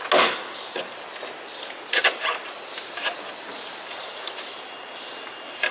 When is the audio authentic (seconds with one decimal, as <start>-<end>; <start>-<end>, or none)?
0.0-5.7

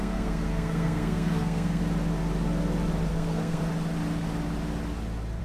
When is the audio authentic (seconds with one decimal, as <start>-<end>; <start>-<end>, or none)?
1.8-3.1; 3.6-5.4